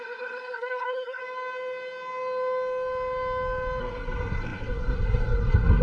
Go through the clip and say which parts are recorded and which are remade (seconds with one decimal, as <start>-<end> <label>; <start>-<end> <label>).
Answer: 0.0-1.2 remade; 1.2-3.8 recorded; 3.8-5.8 remade